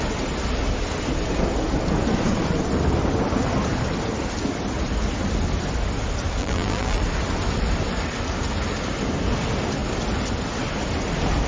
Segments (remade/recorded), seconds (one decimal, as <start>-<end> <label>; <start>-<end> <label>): 0.0-6.4 recorded; 6.4-7.0 remade; 7.0-11.5 recorded